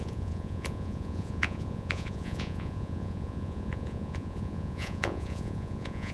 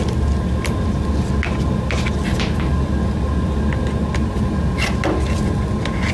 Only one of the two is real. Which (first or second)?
second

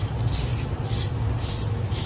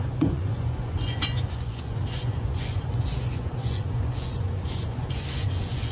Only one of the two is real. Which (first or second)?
first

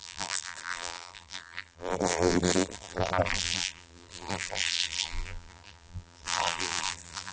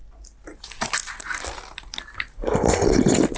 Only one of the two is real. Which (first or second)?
second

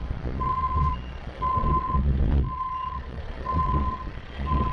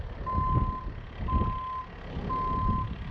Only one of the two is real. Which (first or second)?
second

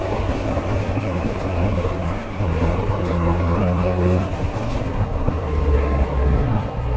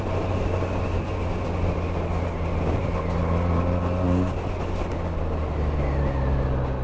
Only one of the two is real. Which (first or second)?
second